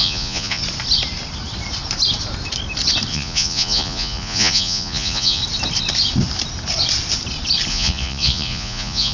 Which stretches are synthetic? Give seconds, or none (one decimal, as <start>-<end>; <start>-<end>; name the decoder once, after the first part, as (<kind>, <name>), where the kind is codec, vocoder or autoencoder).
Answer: 0.0-0.6 (vocoder, Vocos); 3.1-5.4; 7.7-9.1